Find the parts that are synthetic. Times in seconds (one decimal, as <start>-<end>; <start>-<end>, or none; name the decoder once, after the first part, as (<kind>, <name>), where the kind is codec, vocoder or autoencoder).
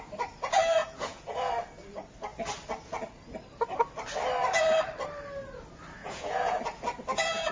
0.8-1.5 (vocoder, Vocos); 6.0-6.6